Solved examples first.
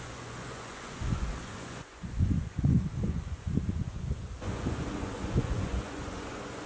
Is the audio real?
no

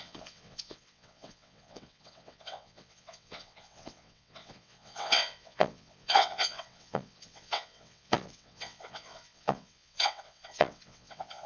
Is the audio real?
no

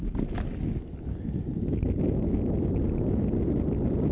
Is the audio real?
yes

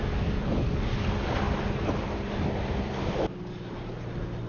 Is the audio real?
yes